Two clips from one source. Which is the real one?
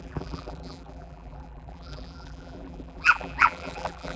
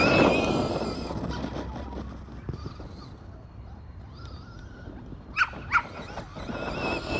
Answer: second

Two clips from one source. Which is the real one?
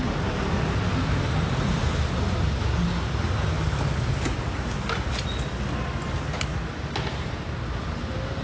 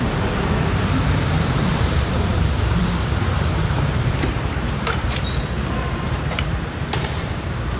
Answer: first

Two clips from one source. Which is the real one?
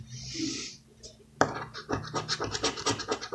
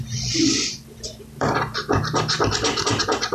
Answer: first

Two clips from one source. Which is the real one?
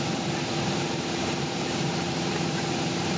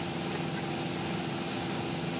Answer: second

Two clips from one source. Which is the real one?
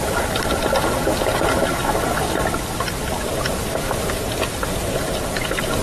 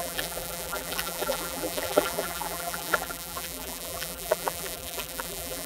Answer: first